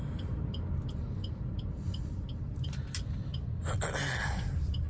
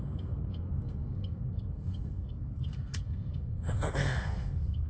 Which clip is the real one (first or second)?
first